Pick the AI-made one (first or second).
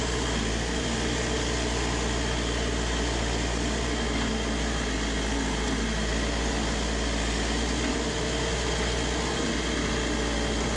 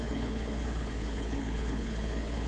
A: second